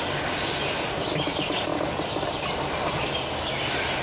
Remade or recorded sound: recorded